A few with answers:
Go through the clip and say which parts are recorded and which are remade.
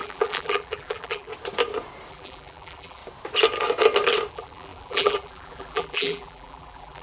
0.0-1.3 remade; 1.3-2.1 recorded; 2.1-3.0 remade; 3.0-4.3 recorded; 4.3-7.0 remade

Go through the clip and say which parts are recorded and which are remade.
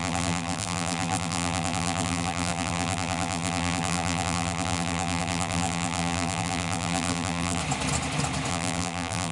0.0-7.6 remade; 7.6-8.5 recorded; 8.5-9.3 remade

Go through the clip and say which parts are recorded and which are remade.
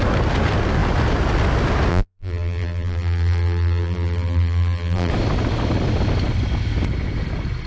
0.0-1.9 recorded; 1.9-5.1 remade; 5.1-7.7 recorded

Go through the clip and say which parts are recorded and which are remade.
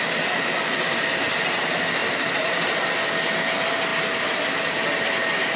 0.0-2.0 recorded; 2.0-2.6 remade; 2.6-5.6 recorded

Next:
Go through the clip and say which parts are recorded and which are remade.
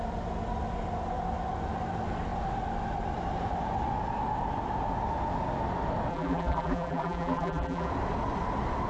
0.0-6.1 recorded; 6.1-7.9 remade; 7.9-8.9 recorded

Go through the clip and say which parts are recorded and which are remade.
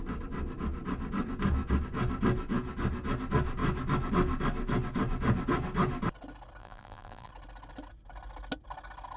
0.0-6.6 recorded; 6.6-7.3 remade; 7.3-9.2 recorded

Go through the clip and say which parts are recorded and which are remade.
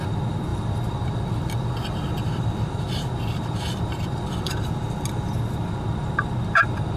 0.0-0.5 recorded; 0.5-4.7 remade; 4.7-7.0 recorded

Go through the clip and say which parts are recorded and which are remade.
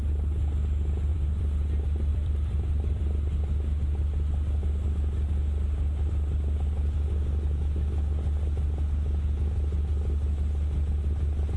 0.0-1.1 recorded; 1.1-1.7 remade; 1.7-2.1 recorded; 2.1-3.0 remade; 3.0-11.6 recorded